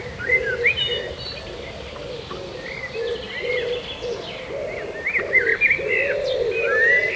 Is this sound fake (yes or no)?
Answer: no